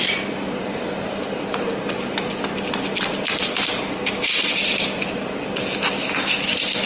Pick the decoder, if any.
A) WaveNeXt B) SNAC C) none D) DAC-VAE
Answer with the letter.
C